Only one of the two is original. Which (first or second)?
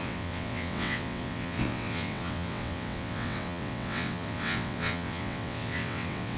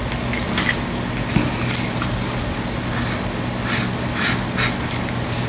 second